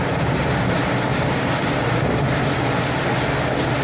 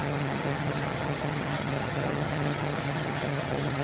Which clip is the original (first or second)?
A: first